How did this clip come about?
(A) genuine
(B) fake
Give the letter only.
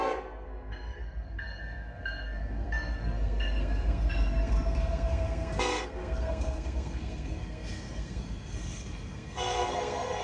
B